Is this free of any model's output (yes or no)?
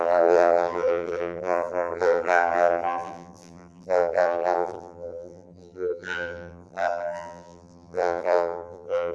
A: no